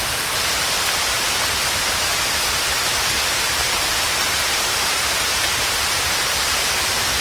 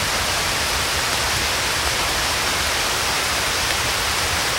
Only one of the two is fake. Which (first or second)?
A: first